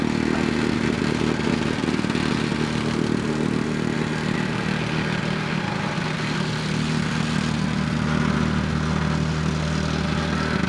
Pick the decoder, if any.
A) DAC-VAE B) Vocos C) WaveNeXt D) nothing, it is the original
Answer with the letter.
D